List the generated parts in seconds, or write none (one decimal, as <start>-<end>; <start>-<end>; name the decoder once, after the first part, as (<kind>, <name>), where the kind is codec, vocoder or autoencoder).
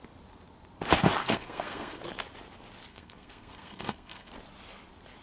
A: 1.2-2.0 (codec, SNAC); 2.9-4.3